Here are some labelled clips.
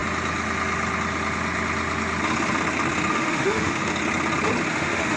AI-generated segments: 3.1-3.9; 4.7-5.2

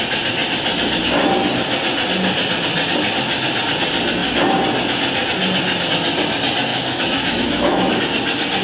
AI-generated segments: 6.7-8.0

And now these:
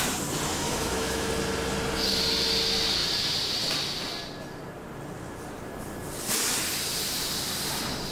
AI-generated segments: 0.5-1.3

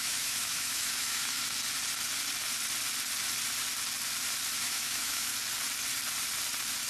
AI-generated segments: 0.0-1.4; 4.6-5.3

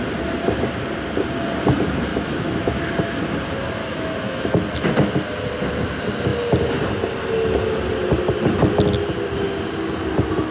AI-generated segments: 2.1-2.8; 3.8-4.5

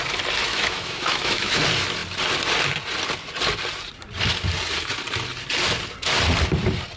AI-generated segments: 0.5-1.6

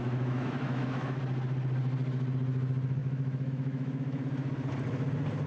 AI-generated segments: 0.0-1.2; 3.0-4.2

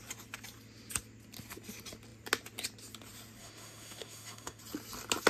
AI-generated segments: 3.4-4.6